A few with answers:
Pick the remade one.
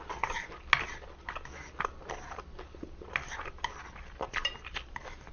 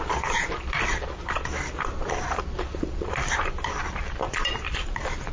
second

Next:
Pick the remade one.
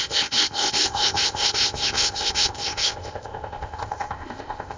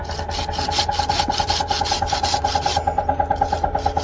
first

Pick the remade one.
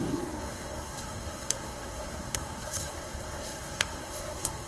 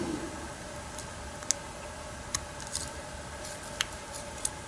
first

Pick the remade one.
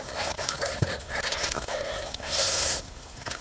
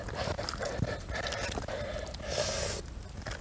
first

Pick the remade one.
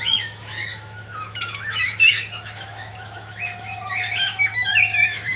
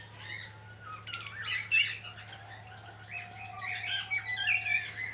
first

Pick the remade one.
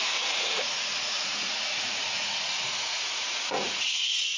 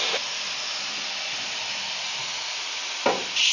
first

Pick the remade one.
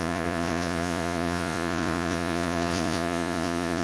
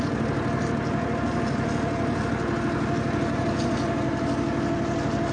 first